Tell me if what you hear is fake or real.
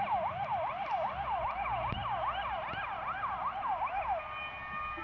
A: real